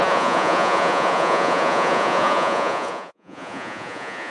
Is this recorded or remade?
remade